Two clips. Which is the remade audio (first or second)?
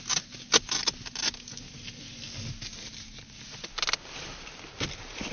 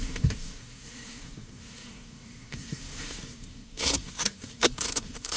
second